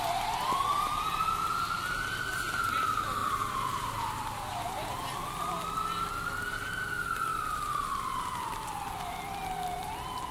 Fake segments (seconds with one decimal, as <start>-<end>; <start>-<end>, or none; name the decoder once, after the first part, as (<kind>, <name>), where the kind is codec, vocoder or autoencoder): 3.2-5.1 (vocoder, BigVGAN v2)